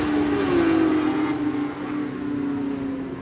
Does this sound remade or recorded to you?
recorded